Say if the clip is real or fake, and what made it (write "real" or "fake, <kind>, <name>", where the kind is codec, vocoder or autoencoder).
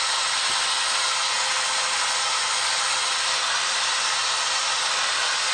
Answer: real